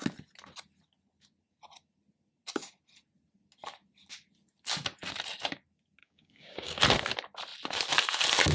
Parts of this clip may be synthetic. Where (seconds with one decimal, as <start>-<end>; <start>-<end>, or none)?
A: 6.0-6.8